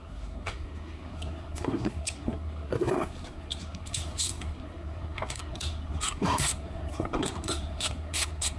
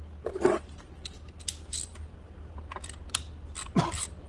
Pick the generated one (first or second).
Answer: first